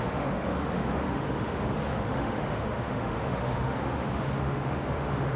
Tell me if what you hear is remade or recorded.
remade